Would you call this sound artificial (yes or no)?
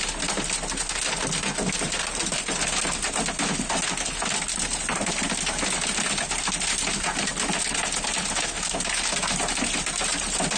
no